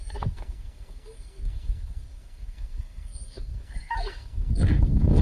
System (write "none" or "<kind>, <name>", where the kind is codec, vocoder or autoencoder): codec, SNAC